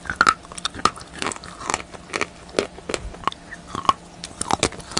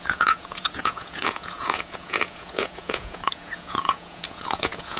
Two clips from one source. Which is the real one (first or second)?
first